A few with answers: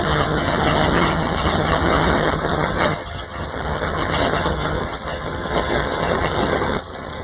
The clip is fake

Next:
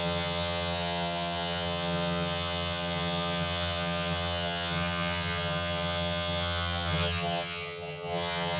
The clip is fake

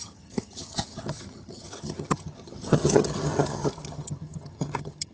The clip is fake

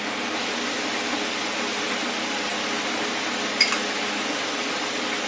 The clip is real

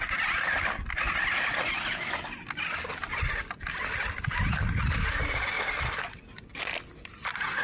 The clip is real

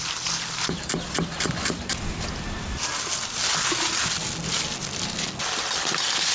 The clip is real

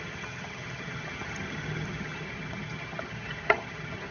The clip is fake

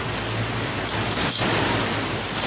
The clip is real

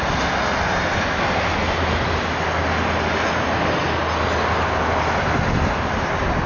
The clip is real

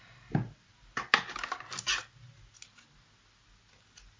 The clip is real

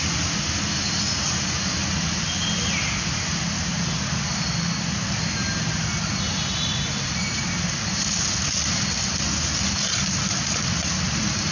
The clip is real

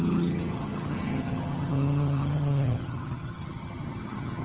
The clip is fake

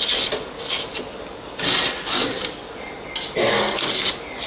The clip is real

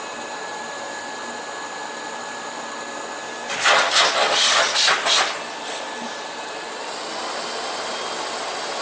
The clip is real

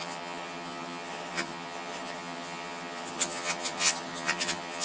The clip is fake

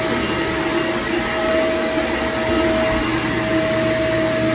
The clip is real